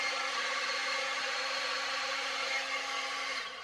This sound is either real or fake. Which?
fake